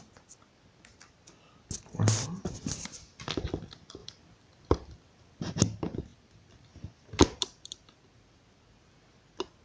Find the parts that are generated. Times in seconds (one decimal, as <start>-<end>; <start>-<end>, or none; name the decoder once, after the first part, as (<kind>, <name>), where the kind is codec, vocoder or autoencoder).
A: 4.0-5.6 (vocoder, BigVGAN v2); 6.1-8.4